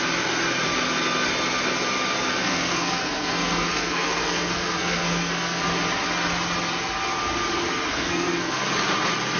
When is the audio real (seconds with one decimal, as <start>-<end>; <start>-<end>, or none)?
0.0-2.4; 5.6-7.9; 8.7-9.4